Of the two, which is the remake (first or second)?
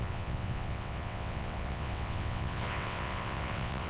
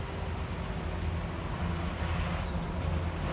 first